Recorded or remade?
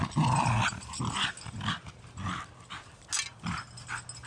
recorded